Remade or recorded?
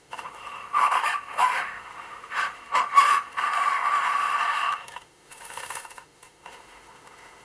remade